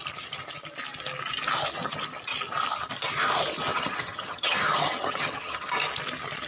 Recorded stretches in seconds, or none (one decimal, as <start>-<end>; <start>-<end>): 0.0-3.7; 5.7-6.5